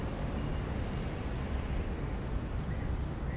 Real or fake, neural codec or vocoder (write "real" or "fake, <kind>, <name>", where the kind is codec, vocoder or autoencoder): real